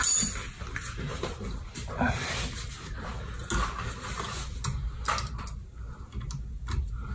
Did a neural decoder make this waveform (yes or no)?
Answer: no